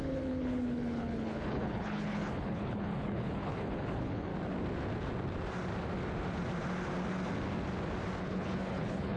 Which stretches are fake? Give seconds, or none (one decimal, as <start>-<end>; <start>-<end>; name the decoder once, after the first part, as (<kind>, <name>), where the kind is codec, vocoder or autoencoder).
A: 0.0-4.3 (codec, HILCodec); 8.2-9.2